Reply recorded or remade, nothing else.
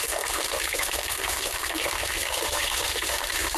remade